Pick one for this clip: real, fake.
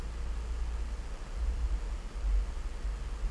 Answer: real